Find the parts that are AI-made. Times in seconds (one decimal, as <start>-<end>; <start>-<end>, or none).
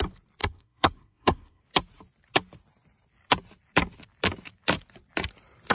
0.4-1.6